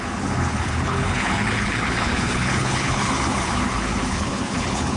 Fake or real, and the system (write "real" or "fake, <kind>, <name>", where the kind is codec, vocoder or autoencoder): fake, codec, HILCodec